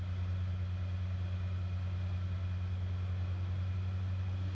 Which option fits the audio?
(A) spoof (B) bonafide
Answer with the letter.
B